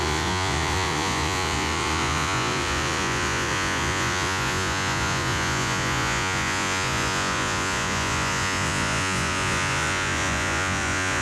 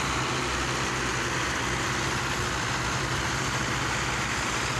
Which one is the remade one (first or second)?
first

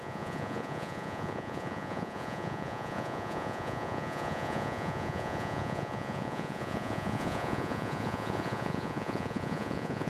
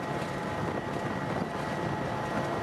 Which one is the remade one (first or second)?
first